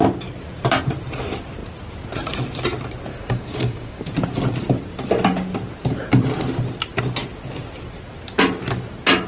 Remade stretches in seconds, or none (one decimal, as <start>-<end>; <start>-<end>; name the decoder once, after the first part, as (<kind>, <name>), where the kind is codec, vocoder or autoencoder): 3.1-4.1 (codec, DAC)